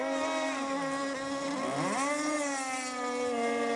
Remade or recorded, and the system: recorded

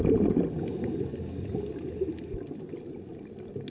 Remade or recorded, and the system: recorded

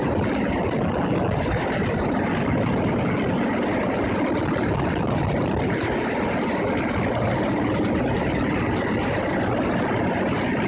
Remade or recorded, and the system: remade, vocoder, BigVGAN v2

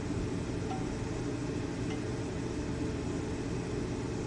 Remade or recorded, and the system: recorded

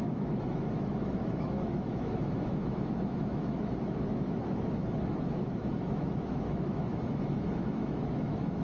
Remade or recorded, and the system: remade, autoencoder, DAC-VAE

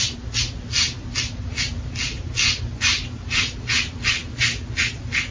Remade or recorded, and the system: recorded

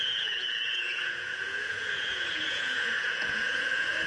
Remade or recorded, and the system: remade, vocoder, Vocos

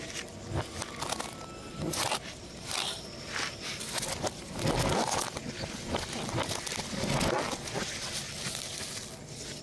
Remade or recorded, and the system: recorded